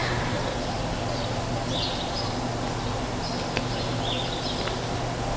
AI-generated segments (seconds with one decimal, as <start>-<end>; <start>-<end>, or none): none